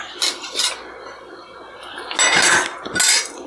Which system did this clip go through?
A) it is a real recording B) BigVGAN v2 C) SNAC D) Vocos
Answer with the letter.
A